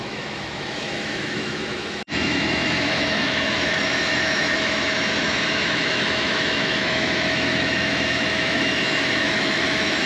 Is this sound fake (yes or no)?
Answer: yes